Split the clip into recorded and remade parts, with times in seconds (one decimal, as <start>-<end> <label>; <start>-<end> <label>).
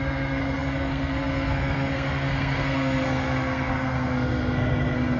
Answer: 0.0-5.2 remade